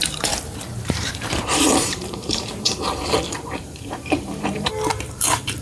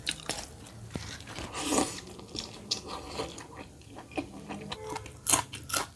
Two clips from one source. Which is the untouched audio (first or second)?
second